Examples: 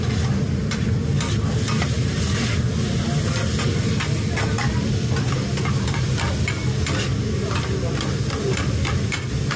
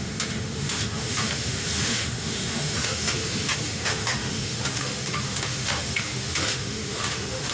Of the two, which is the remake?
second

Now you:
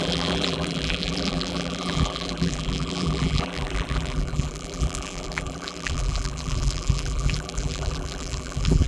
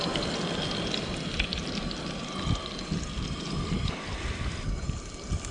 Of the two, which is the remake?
first